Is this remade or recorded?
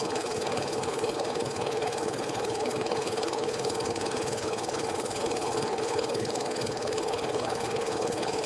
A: remade